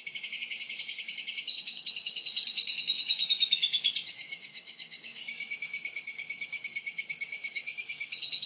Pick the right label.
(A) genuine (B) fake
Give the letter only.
B